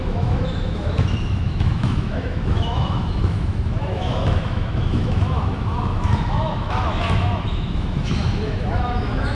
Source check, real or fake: fake